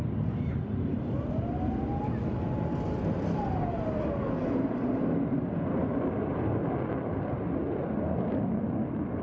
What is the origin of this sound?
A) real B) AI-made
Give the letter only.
A